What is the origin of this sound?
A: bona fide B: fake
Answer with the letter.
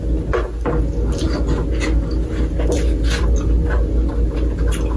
A